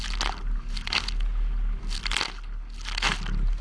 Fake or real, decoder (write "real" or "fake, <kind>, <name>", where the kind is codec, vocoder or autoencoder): real